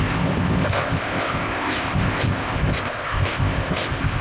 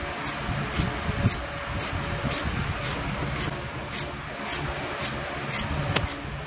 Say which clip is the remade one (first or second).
first